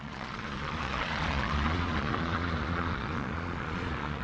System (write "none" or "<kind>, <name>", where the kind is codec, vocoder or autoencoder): vocoder, Vocos